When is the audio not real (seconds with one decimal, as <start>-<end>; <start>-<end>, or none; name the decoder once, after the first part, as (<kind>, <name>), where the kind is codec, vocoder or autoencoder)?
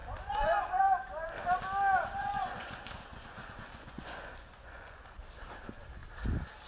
0.0-0.8 (vocoder, Vocos); 2.2-5.2